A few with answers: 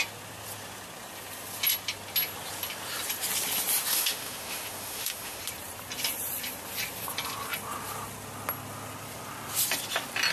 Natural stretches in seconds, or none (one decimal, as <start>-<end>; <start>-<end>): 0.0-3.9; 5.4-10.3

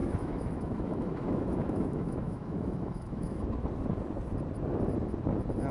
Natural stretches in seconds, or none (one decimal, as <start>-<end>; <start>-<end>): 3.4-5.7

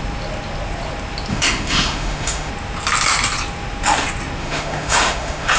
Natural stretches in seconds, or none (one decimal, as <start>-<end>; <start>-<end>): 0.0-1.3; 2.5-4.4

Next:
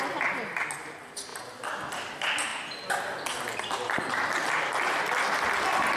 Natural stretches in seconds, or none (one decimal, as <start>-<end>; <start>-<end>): 0.0-6.0

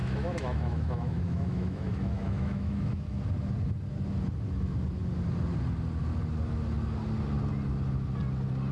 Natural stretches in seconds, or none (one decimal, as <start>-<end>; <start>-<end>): 3.2-8.7